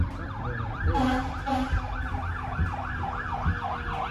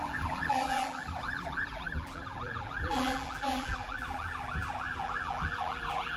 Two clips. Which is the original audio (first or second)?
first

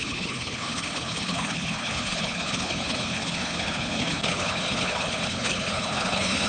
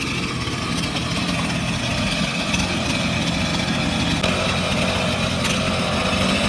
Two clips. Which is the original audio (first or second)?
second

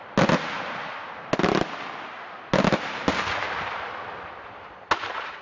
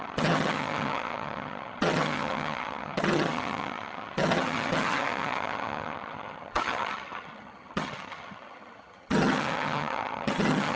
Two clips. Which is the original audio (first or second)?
first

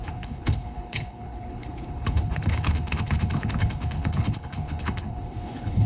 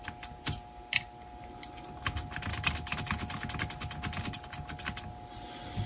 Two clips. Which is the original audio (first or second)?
second